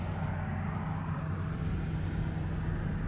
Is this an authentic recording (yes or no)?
yes